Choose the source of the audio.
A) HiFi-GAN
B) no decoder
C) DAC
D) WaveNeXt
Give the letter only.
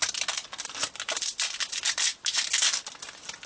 B